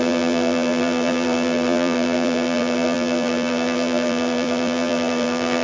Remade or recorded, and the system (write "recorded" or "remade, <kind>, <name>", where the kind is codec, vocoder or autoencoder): remade, vocoder, BigVGAN v2